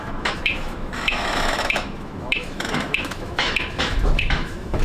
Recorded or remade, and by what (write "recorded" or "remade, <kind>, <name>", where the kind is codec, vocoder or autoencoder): remade, autoencoder, DAC-VAE